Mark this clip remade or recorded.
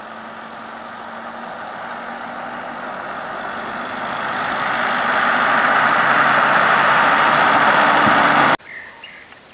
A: recorded